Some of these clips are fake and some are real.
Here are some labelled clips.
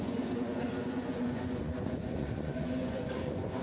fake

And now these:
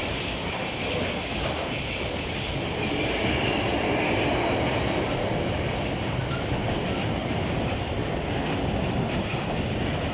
real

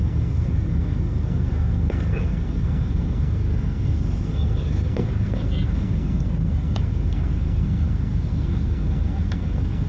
fake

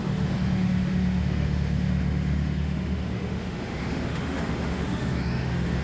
fake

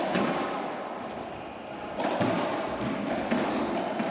real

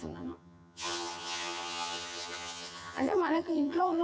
fake